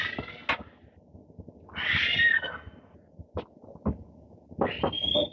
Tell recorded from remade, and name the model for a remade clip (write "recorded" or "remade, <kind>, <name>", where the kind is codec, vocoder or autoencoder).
recorded